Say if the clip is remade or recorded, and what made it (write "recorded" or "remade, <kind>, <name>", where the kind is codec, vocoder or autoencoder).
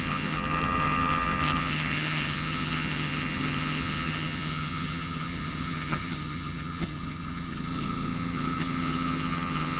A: remade, vocoder, HiFi-GAN